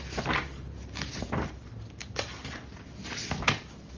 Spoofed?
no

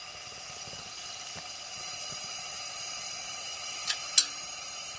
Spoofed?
no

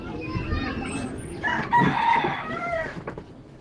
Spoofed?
yes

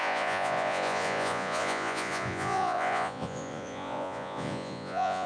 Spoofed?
yes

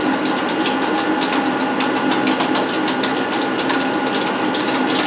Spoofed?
no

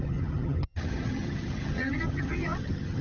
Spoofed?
yes